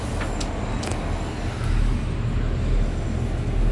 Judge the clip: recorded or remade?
recorded